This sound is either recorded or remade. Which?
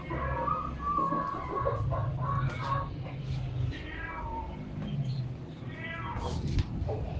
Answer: recorded